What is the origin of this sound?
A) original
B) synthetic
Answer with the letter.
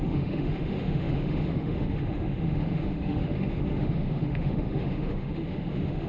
B